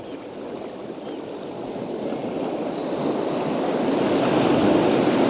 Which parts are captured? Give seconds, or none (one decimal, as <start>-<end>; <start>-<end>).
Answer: 0.0-5.3